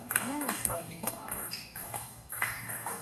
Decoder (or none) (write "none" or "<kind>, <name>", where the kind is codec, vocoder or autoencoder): codec, DAC